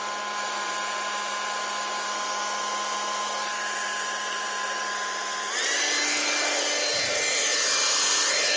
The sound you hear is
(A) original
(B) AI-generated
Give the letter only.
A